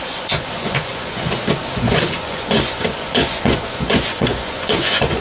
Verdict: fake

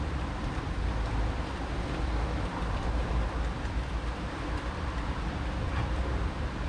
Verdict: fake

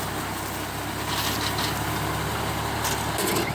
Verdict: real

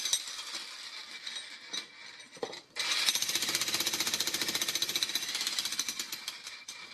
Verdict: real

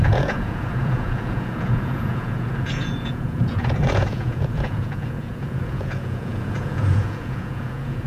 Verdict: fake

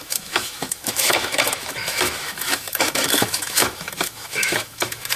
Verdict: fake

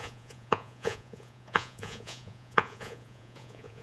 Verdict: fake